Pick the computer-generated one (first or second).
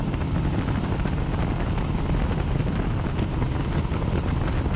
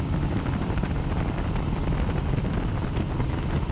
second